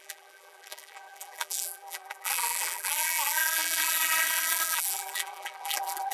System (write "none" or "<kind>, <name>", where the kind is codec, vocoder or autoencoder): vocoder, BigVGAN v2